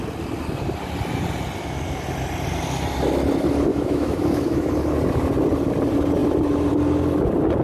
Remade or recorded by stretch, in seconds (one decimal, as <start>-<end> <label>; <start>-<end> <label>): 0.0-3.7 recorded; 3.7-4.7 remade; 4.7-7.6 recorded